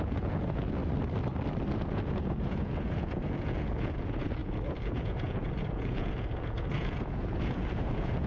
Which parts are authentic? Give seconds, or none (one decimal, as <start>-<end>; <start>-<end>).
0.8-1.8